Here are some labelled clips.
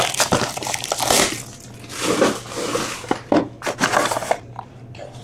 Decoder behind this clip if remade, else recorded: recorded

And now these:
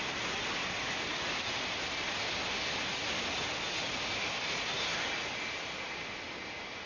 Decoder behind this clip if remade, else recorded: recorded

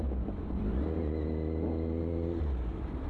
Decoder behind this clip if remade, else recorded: recorded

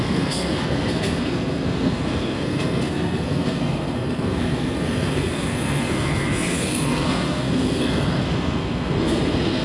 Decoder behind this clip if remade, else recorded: remade, codec, SNAC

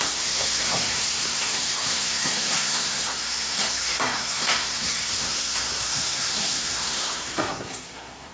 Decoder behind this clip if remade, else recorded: remade, codec, SNAC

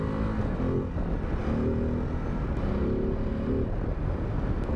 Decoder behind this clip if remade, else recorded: recorded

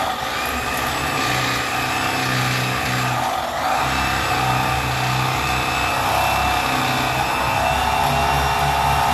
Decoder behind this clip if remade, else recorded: recorded